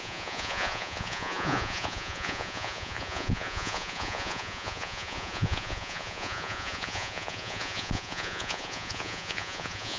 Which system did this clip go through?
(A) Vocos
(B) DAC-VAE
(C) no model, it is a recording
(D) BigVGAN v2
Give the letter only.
A